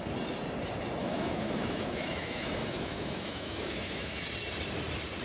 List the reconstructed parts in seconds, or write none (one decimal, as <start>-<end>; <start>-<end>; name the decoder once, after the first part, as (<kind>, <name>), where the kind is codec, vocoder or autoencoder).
1.0-4.1 (autoencoder, DAC-VAE)